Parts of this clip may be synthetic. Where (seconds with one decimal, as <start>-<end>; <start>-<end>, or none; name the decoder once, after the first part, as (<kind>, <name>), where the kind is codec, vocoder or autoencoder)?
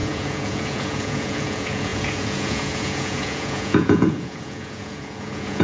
0.0-5.6 (vocoder, Vocos)